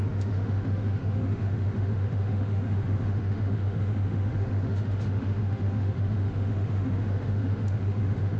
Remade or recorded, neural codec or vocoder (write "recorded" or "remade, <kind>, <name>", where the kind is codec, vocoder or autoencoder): remade, autoencoder, DAC-VAE